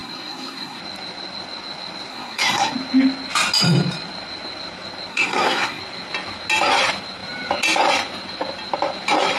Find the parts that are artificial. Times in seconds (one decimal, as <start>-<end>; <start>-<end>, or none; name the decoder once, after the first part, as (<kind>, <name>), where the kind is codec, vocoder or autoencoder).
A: 0.0-0.8 (codec, SNAC); 2.1-2.7; 5.1-5.8